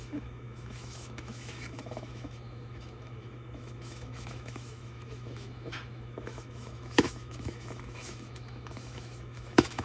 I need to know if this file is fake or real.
fake